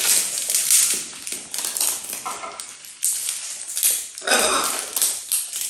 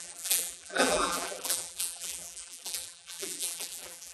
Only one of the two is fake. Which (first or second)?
second